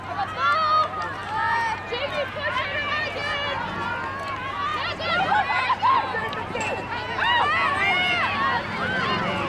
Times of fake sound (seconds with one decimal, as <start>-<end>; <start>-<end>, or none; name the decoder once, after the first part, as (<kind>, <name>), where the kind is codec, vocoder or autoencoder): none